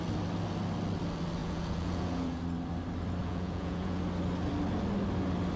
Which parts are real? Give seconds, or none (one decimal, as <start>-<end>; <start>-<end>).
0.0-1.4; 2.4-3.2; 4.0-5.6